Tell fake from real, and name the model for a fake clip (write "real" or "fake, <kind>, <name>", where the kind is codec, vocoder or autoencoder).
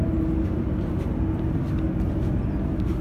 real